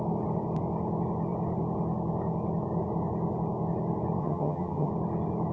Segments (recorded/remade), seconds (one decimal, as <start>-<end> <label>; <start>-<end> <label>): 0.0-4.2 recorded; 4.2-4.9 remade; 4.9-5.5 recorded